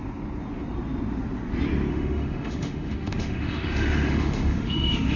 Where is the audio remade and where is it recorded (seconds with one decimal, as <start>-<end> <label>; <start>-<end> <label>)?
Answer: 0.0-1.9 recorded; 1.9-5.2 remade